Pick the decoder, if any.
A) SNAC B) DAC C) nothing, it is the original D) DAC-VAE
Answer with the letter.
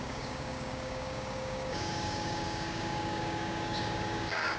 B